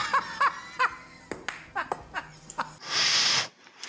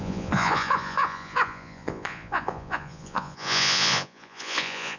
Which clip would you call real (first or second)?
first